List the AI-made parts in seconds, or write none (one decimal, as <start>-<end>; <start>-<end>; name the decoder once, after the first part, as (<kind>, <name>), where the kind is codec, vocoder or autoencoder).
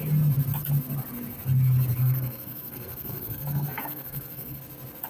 2.0-4.6 (codec, SNAC)